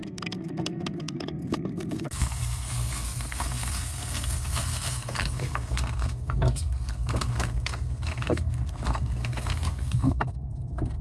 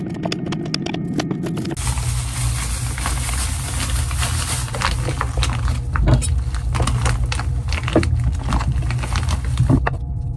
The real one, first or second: second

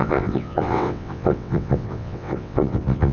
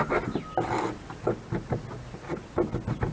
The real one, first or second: second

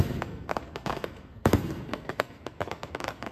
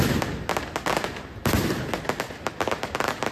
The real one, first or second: second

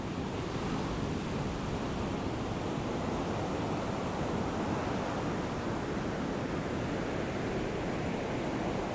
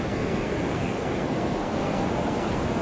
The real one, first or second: first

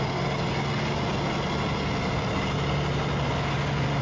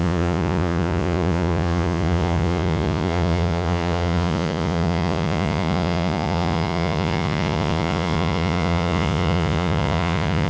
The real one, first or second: first